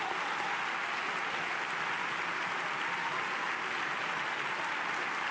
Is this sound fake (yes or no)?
no